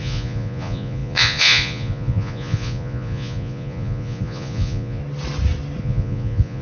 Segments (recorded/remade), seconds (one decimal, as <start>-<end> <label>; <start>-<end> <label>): 0.0-5.0 remade; 5.0-5.8 recorded; 5.8-6.6 remade